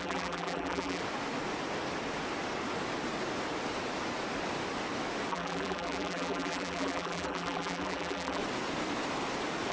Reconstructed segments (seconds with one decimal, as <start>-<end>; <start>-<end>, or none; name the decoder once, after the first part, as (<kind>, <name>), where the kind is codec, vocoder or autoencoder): 0.0-1.0 (vocoder, BigVGAN v2); 5.3-8.4